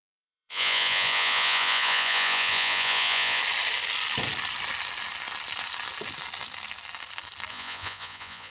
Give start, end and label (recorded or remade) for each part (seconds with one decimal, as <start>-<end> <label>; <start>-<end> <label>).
0.0-3.4 remade; 3.4-7.5 recorded; 7.5-8.5 remade